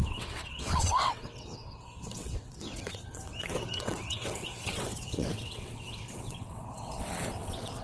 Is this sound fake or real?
fake